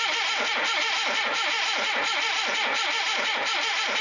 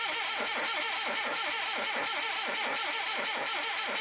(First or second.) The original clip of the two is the second